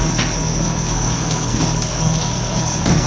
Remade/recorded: remade